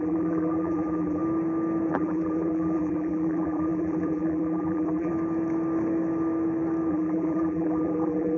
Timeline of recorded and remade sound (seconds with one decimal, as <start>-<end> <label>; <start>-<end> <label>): 0.0-1.2 remade; 1.2-1.9 recorded; 1.9-5.1 remade; 5.1-6.9 recorded; 6.9-8.4 remade